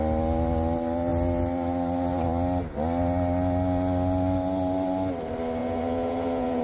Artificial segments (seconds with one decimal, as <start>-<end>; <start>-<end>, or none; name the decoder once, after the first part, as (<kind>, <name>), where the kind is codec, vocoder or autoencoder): 5.6-6.6 (vocoder, Vocos)